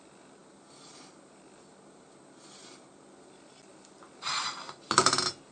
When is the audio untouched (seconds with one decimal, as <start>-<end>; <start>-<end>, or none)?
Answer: 0.0-5.5